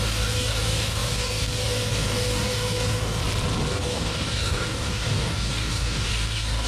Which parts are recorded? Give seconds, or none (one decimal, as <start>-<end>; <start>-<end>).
3.2-3.7